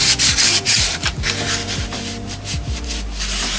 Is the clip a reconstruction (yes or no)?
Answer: yes